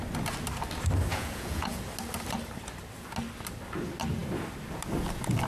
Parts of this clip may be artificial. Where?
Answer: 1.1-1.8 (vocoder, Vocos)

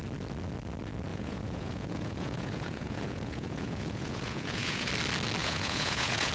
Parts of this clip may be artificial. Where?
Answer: 1.1-4.9 (vocoder, Vocos); 5.4-6.3

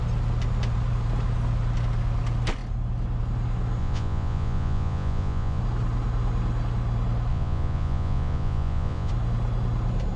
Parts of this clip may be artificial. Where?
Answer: 3.8-5.6 (vocoder, Vocos); 7.3-9.1